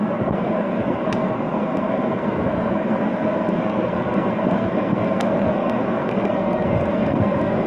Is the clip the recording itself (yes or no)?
no